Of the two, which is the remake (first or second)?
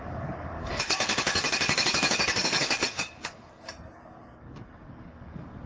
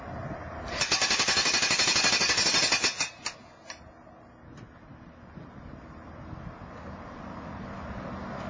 first